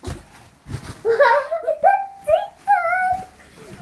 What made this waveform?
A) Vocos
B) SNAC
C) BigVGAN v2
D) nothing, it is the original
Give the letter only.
D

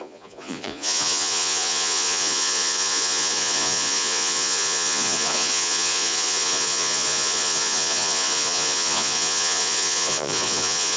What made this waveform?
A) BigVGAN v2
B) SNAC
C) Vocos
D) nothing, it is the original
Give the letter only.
C